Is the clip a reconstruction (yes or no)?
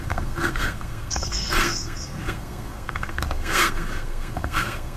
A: yes